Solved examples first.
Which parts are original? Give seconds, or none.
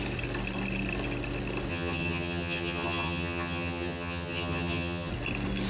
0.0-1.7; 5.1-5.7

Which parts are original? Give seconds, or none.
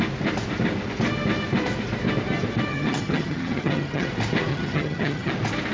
0.0-2.7; 4.1-4.5; 5.3-5.7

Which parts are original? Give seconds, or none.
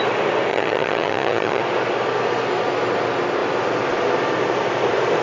0.0-0.5; 1.6-5.2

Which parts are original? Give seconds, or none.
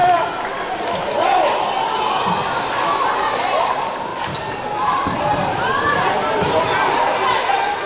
0.0-7.9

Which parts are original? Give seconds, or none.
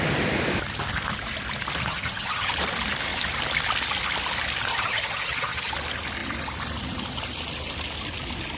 0.0-1.9; 2.5-4.7; 5.7-8.6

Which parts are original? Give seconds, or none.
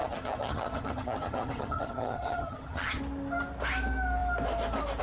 3.0-5.0